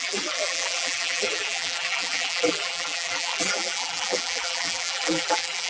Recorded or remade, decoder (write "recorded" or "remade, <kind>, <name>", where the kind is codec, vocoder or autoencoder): remade, vocoder, BigVGAN v2